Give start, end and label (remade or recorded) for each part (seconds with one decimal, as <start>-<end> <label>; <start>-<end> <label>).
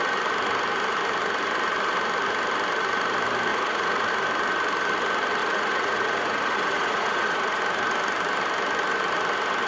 0.0-3.5 recorded; 3.5-4.1 remade; 4.1-5.4 recorded; 5.4-7.6 remade; 7.6-9.7 recorded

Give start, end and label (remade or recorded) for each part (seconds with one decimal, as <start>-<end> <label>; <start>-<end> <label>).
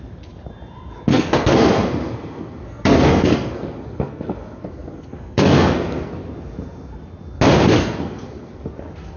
0.0-1.1 recorded; 1.1-6.1 remade; 6.1-7.8 recorded; 7.8-8.7 remade; 8.7-9.2 recorded